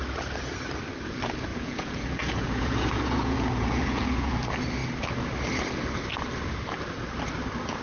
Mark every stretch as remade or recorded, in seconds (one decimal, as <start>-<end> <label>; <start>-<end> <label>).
0.0-1.5 recorded; 1.5-4.3 remade; 4.3-7.8 recorded